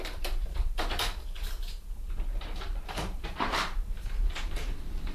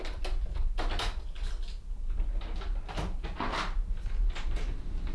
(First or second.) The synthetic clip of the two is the first